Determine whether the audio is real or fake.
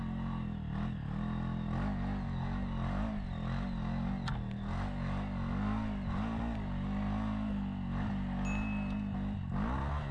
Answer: real